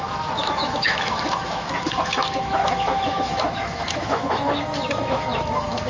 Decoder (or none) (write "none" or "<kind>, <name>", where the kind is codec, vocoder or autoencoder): autoencoder, DAC-VAE